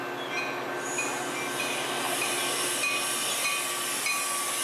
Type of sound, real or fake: real